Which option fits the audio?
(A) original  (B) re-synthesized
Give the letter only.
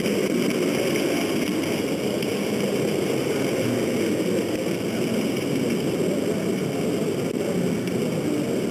A